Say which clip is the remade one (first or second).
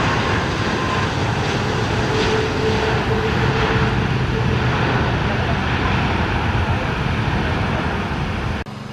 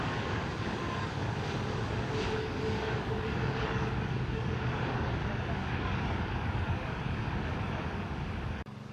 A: second